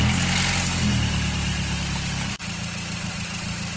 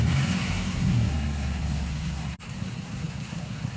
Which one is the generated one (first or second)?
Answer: second